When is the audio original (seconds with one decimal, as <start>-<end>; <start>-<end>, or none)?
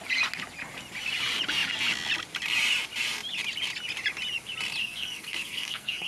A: 0.0-4.8